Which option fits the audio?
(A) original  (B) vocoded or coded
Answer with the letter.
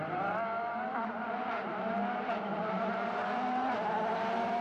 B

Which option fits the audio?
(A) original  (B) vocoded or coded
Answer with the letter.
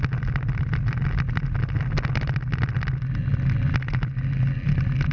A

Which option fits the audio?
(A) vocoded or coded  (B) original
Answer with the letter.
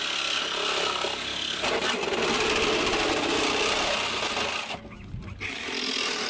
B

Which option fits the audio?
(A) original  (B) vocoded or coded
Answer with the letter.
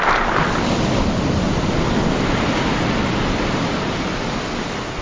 A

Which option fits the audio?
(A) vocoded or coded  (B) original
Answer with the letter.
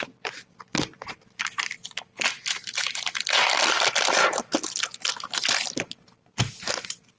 B